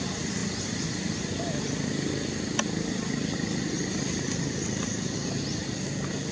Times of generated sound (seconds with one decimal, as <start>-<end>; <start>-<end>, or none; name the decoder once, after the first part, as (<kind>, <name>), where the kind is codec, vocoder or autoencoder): none